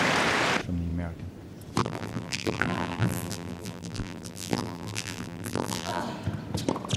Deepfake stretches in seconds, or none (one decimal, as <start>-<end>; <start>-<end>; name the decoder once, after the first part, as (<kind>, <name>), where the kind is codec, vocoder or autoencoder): 1.8-6.0 (vocoder, BigVGAN v2)